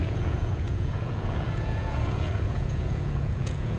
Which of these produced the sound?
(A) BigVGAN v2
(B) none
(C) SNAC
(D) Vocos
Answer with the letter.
D